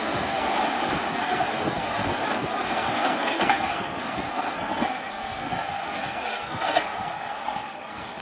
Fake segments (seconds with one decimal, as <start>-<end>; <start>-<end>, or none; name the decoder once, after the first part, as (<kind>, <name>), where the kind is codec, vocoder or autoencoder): 0.0-0.5 (codec, SNAC); 1.1-8.2